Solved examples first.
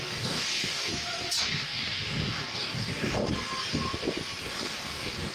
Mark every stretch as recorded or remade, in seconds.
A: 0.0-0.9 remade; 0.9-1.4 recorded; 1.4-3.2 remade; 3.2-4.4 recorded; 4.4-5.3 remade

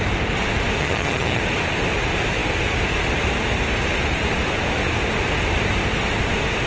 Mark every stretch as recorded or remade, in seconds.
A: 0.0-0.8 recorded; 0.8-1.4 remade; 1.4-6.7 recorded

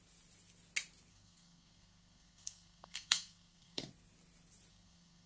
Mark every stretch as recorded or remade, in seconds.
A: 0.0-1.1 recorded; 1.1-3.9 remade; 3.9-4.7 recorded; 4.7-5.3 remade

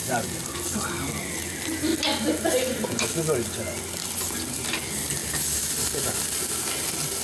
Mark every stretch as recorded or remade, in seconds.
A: 0.0-7.2 recorded

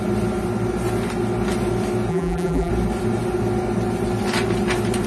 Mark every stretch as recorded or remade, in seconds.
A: 0.0-2.1 recorded; 2.1-2.7 remade; 2.7-5.1 recorded

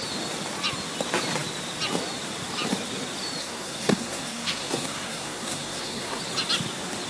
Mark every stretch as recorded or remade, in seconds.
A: 0.0-3.4 recorded; 3.4-6.2 remade; 6.2-7.1 recorded

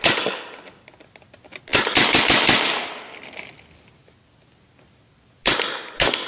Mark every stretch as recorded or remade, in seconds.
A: 0.0-6.3 recorded

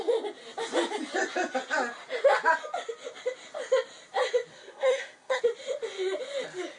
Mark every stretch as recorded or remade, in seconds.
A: 0.0-4.5 recorded; 4.5-5.4 remade; 5.4-6.8 recorded